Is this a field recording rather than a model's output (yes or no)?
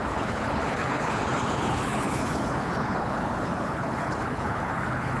no